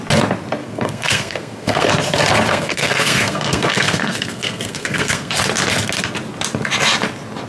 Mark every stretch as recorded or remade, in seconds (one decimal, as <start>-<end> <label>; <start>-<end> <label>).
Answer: 0.0-0.6 recorded; 0.6-1.9 remade; 1.9-2.5 recorded; 2.5-5.3 remade; 5.3-7.5 recorded